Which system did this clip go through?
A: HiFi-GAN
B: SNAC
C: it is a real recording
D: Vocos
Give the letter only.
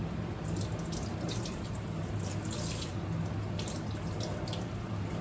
C